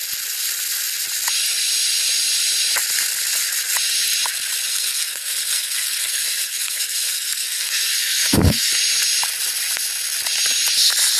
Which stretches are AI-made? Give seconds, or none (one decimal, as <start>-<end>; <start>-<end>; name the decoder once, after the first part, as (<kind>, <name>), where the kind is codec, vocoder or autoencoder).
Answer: 4.7-8.7 (codec, SNAC)